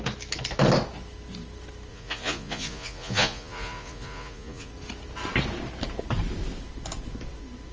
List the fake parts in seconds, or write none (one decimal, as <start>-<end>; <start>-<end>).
1.9-4.7